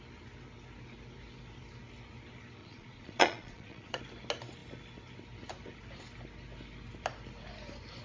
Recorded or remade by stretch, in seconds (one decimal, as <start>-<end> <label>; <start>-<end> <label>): 0.0-2.6 recorded; 2.6-4.0 remade; 4.0-8.0 recorded